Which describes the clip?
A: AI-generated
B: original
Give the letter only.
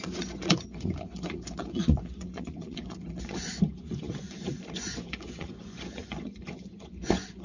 A